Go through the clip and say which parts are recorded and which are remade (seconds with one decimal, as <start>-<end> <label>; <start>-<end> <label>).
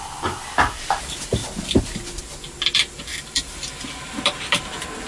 0.0-3.1 recorded; 3.1-4.0 remade; 4.0-5.1 recorded